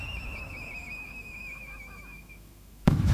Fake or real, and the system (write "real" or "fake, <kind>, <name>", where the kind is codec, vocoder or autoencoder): fake, autoencoder, DAC-VAE